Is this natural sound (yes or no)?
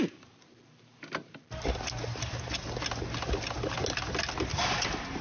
yes